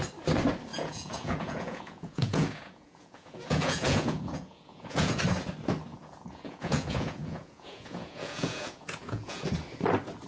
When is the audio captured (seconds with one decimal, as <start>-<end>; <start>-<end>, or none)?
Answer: 0.0-0.7; 5.2-5.9; 9.5-10.3